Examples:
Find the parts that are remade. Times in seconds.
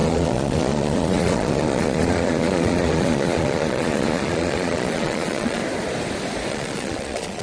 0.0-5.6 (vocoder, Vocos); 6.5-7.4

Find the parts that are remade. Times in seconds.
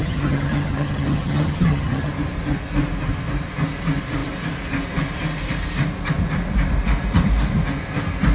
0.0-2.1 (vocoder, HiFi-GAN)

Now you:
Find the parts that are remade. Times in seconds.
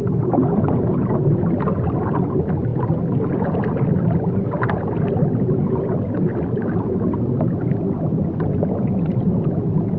none